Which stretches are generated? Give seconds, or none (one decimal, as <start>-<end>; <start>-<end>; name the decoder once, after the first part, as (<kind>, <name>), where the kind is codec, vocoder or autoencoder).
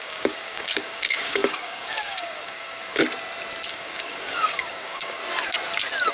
0.0-3.0 (codec, DAC); 3.7-5.2